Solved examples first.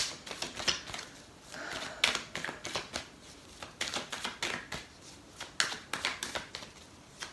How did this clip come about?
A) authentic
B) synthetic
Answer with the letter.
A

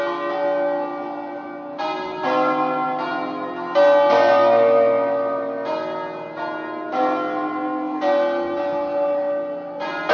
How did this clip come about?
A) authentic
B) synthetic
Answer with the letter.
A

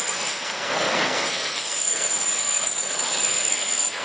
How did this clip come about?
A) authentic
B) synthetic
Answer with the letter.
B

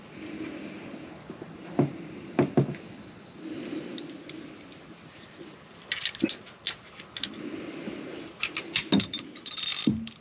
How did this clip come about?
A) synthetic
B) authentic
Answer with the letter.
B